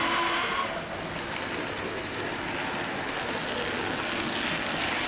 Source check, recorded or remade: recorded